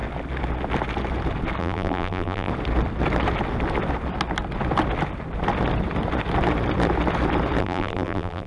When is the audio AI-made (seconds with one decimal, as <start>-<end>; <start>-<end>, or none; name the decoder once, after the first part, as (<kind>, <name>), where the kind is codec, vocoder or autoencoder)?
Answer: 1.6-2.5 (vocoder, BigVGAN v2); 7.6-8.5